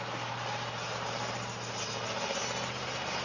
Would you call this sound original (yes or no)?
yes